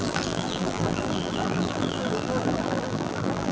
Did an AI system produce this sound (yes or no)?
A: yes